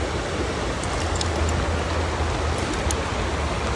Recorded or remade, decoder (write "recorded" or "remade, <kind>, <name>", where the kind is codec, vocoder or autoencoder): recorded